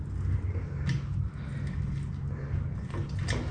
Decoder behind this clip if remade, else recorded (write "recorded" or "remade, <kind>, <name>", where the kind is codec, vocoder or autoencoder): recorded